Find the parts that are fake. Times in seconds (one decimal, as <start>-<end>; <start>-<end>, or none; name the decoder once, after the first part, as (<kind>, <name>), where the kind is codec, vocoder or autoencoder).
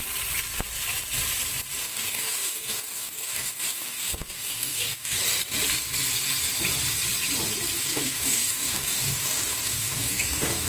1.8-5.2 (codec, DAC); 7.8-10.7